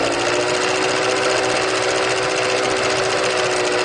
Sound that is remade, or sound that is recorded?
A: recorded